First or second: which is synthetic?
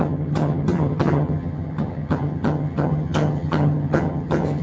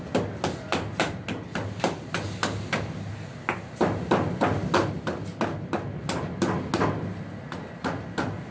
first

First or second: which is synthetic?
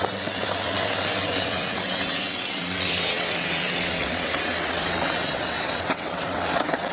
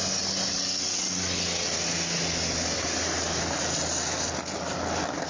first